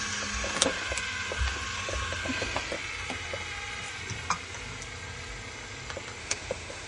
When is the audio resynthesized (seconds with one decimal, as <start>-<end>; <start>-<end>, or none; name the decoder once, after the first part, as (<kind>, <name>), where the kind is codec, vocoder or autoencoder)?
6.2-6.9 (autoencoder, DAC-VAE)